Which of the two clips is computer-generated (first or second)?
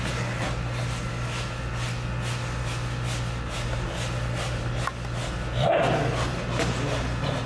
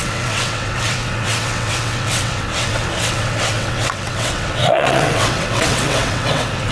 second